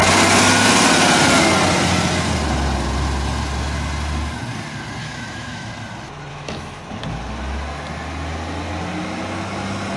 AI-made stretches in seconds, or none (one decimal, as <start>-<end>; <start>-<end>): 5.0-5.7; 6.3-6.8